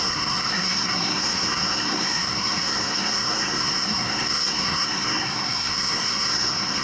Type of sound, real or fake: fake